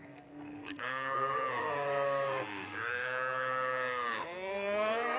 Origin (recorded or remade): remade